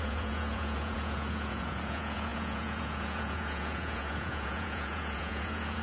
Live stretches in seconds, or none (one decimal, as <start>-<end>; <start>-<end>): none